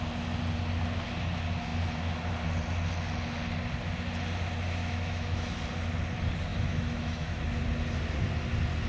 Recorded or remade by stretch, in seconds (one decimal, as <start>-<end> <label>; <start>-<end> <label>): 0.0-4.8 recorded; 4.8-5.6 remade; 5.6-6.5 recorded; 6.5-7.4 remade; 7.4-8.9 recorded